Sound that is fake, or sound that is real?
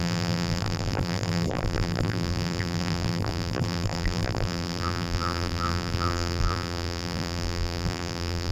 fake